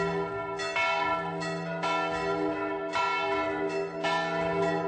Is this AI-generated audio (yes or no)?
no